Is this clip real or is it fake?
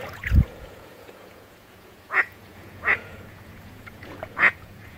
fake